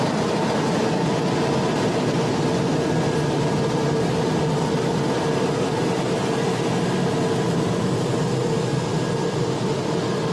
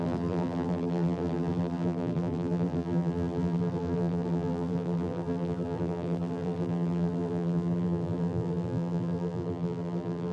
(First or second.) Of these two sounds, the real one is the first